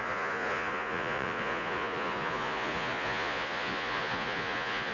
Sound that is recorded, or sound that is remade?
remade